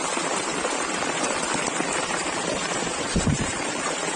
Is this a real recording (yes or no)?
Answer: no